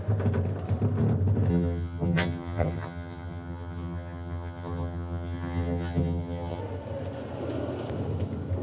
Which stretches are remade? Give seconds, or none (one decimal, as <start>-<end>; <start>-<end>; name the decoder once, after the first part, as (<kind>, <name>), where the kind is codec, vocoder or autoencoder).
1.5-6.6 (vocoder, HiFi-GAN)